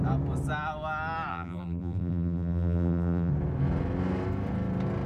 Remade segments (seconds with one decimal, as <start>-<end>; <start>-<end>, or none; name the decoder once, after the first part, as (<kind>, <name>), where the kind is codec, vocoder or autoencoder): 1.3-3.3 (vocoder, BigVGAN v2)